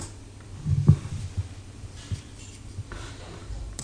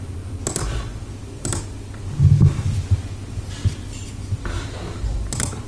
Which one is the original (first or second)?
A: second